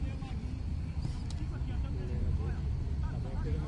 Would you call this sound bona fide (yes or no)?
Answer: yes